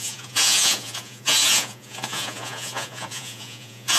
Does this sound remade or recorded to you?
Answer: remade